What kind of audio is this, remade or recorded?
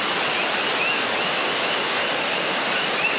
recorded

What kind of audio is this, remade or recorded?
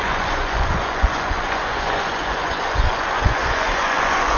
remade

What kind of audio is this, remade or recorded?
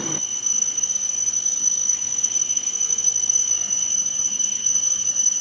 remade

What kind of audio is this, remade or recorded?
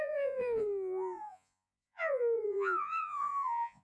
remade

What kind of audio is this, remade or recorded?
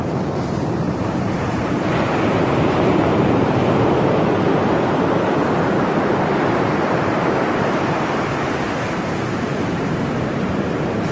remade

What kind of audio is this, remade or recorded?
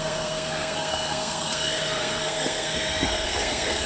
remade